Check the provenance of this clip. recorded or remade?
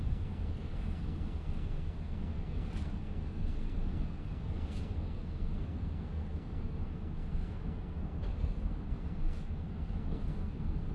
remade